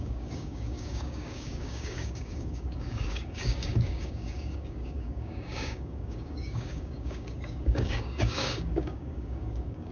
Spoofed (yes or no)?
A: yes